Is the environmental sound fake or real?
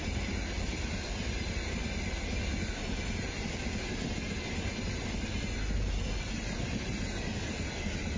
real